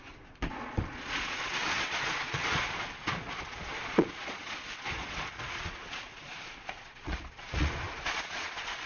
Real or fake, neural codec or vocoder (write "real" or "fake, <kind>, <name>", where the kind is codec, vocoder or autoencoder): fake, vocoder, Vocos